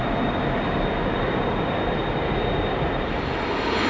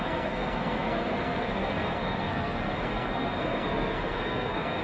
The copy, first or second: second